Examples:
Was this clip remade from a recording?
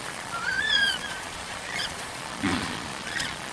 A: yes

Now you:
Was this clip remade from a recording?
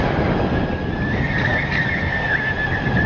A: no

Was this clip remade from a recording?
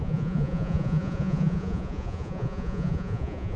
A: yes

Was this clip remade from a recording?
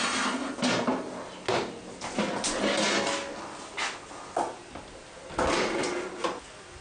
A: no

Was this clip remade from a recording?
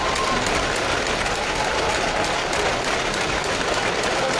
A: no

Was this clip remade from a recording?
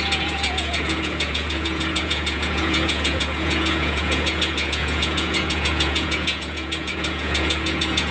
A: yes